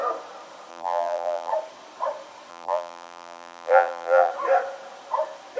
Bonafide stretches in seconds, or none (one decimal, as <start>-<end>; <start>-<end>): 0.0-0.7; 1.5-2.5; 4.3-5.6